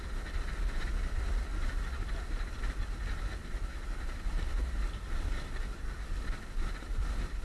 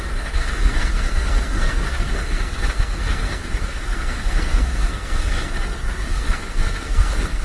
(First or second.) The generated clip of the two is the second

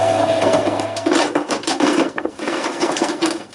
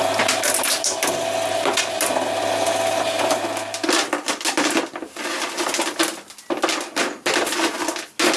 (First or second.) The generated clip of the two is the first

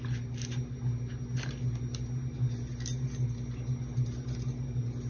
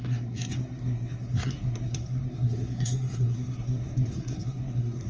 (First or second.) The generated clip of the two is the second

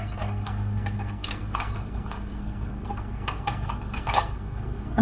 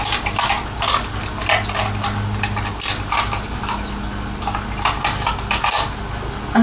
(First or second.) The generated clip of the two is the first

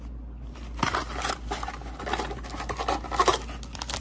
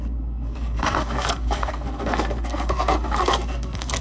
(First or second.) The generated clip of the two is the second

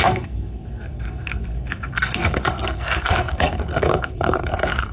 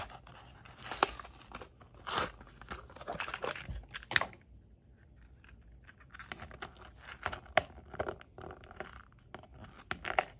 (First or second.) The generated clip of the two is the first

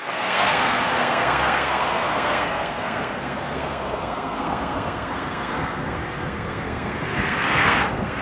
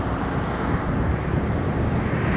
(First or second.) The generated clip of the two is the first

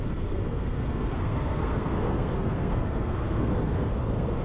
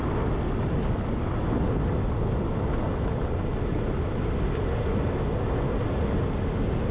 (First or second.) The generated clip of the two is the first